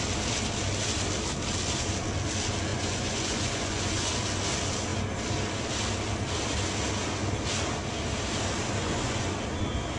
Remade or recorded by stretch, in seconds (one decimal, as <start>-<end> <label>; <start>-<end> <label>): 0.0-2.7 recorded; 2.7-4.1 remade; 4.1-8.8 recorded; 8.8-9.3 remade; 9.3-10.0 recorded